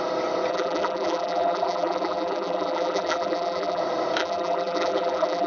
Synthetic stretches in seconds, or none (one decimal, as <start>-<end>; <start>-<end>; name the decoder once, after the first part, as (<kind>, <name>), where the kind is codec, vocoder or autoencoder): 0.5-3.8 (vocoder, BigVGAN v2); 4.2-5.5